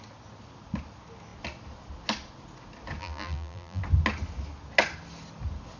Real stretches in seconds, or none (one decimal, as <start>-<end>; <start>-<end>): 0.0-3.0; 3.8-5.8